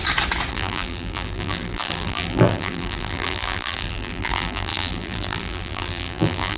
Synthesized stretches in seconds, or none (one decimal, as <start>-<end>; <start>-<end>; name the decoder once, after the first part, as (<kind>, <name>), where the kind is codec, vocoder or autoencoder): 0.5-6.6 (vocoder, BigVGAN v2)